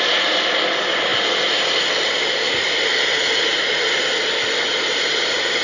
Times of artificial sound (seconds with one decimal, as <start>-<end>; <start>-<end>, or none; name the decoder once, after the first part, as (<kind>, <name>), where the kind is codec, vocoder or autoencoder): none